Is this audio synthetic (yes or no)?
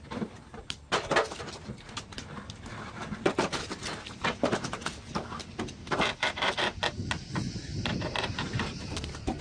yes